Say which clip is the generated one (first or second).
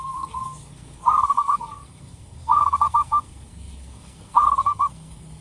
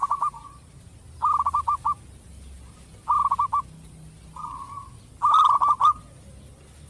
first